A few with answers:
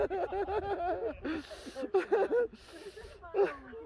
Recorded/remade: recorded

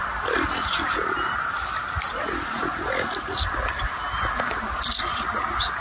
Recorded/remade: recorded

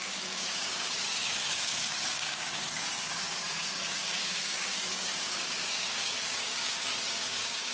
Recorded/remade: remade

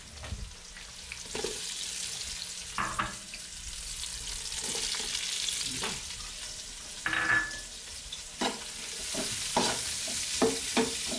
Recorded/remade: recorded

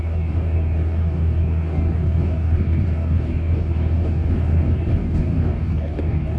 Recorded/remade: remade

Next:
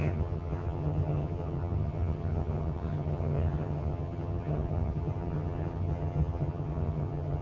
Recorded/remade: remade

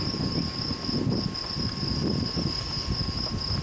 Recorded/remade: recorded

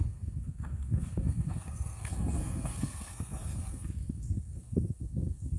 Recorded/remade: remade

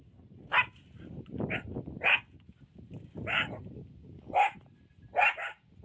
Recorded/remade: recorded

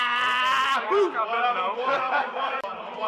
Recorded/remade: remade